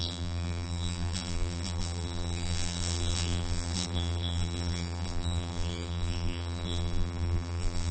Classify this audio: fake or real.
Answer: fake